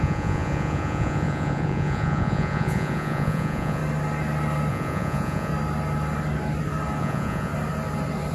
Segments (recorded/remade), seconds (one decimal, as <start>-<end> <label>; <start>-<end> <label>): 0.0-3.8 remade; 3.8-4.7 recorded; 4.7-5.5 remade; 5.5-7.0 recorded; 7.0-7.5 remade; 7.5-8.3 recorded